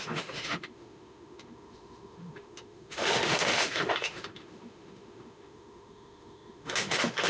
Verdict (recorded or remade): remade